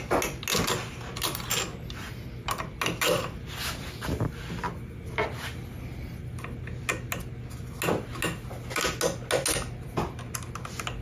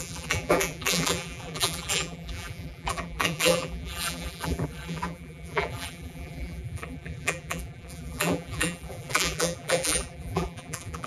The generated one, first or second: second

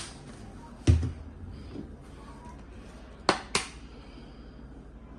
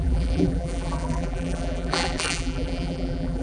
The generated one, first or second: second